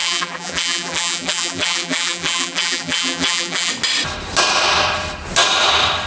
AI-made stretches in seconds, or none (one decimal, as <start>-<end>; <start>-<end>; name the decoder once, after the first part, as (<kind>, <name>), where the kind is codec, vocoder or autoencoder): 0.0-3.7 (vocoder, BigVGAN v2)

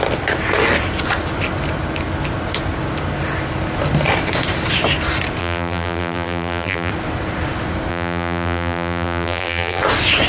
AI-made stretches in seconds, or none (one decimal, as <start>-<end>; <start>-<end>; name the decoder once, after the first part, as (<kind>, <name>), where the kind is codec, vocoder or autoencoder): 5.4-6.9 (vocoder, BigVGAN v2); 7.9-9.8

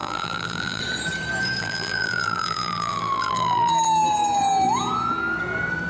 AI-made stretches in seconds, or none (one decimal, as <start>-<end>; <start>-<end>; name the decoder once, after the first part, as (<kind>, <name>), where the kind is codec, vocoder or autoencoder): 0.0-0.8 (vocoder, BigVGAN v2); 1.6-3.7